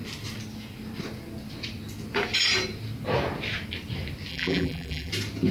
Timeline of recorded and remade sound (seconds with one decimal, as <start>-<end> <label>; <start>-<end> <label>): 0.0-4.3 recorded; 4.3-5.1 remade; 5.1-5.5 recorded